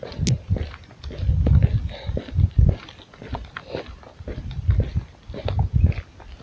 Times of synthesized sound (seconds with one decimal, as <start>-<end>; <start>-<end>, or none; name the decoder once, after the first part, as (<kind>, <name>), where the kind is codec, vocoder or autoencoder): none

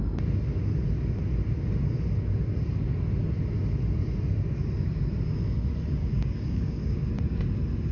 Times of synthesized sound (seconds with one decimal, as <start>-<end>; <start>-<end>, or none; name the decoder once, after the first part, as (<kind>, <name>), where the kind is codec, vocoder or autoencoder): 6.0-7.1 (codec, DAC)

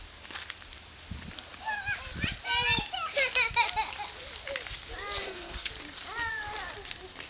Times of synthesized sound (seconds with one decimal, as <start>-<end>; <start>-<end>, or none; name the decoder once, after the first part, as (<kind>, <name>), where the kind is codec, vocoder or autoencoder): 5.2-5.7 (codec, SNAC)

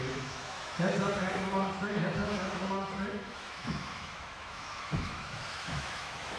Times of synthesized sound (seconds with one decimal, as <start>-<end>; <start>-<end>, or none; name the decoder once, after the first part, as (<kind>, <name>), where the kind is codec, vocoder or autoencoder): 0.0-6.4 (autoencoder, DAC-VAE)

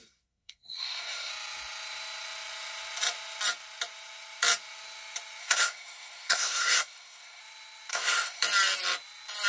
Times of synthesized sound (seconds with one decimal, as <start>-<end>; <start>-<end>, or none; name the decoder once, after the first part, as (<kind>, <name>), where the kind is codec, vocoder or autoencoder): 0.0-1.3 (codec, SNAC); 5.4-7.4; 7.9-8.4

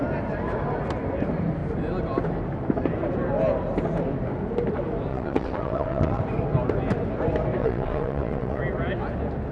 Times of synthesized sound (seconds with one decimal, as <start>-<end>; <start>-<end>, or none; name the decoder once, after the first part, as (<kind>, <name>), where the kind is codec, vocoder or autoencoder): 5.1-6.2 (vocoder, WaveNeXt); 7.6-8.6